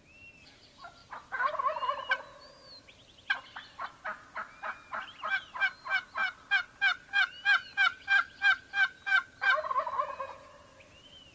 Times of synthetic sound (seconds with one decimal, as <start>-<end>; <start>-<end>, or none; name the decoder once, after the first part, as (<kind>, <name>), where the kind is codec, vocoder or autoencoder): 1.0-1.5 (vocoder, BigVGAN v2)